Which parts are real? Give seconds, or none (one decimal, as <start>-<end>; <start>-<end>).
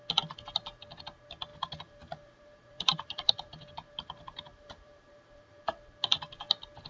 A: 0.0-1.5; 5.6-6.9